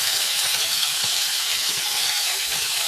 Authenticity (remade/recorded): remade